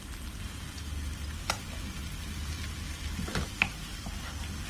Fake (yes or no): no